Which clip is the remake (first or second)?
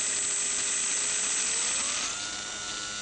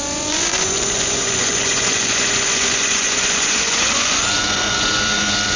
second